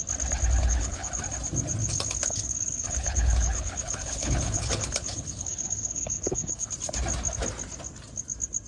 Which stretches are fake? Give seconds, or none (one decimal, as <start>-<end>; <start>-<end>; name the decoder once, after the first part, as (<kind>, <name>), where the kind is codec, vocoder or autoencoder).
0.6-1.1 (codec, HILCodec); 1.8-6.7